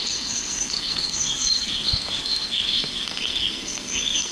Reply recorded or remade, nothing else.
remade